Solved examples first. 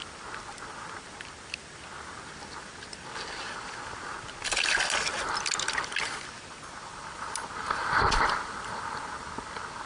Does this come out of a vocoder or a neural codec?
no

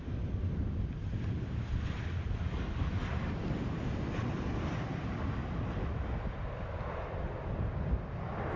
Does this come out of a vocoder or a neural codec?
no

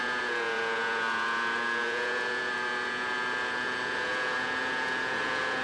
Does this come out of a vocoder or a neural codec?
yes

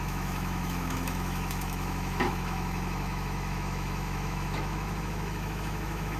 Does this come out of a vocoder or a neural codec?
yes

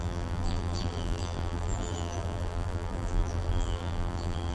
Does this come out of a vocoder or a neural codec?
yes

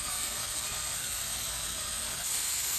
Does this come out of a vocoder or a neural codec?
yes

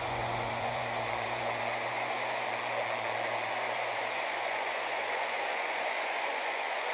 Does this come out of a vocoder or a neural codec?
yes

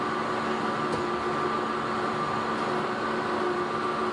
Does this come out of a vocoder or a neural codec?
no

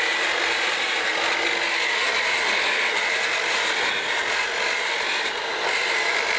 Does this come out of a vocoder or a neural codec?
no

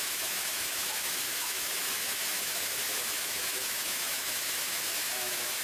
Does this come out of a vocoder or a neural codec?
yes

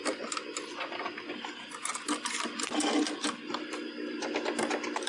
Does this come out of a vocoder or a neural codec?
no